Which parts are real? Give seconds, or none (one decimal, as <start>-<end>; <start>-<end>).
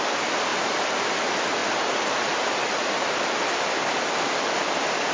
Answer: 0.0-5.1